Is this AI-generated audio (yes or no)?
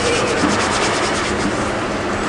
no